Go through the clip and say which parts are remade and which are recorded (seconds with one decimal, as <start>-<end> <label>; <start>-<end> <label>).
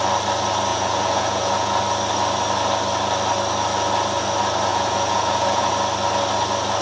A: 0.0-0.7 recorded; 0.7-1.8 remade; 1.8-4.7 recorded; 4.7-5.7 remade; 5.7-6.8 recorded